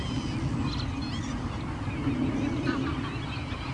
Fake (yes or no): no